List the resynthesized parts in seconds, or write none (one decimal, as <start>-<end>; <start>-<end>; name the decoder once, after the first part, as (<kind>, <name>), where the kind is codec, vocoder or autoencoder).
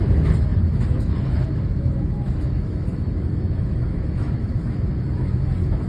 0.0-5.9 (autoencoder, DAC-VAE)